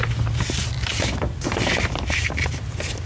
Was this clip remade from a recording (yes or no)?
no